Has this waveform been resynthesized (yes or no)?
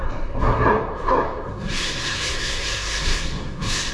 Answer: yes